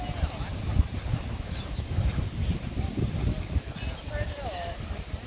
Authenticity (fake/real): real